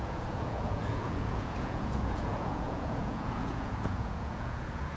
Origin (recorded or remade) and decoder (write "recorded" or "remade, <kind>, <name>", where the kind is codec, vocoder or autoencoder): remade, vocoder, Vocos